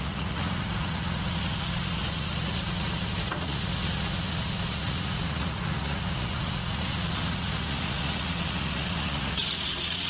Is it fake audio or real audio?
fake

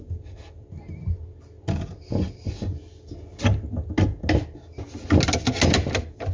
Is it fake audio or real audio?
real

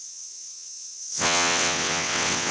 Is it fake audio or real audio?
fake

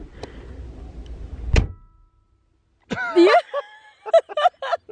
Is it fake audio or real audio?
real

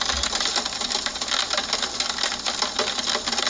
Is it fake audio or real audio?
real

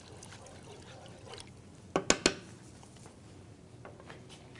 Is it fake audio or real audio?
real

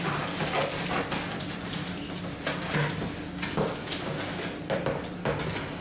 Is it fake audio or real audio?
real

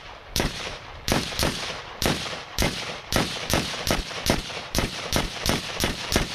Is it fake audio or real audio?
fake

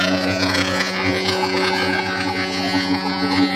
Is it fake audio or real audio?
fake